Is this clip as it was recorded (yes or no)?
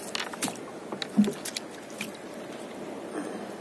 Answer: yes